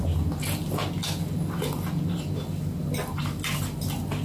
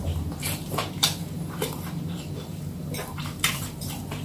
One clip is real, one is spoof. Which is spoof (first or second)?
second